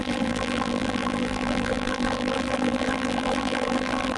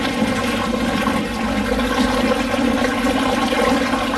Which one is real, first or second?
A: second